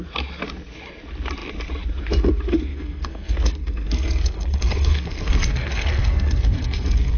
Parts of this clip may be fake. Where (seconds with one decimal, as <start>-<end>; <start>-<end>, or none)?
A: 2.7-7.2